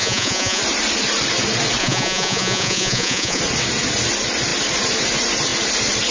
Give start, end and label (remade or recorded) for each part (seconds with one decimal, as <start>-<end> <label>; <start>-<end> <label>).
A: 0.0-0.6 remade; 0.6-1.8 recorded; 1.8-3.4 remade; 3.4-6.1 recorded